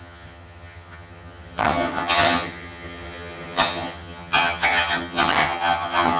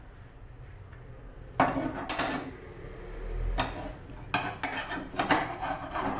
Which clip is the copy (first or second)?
first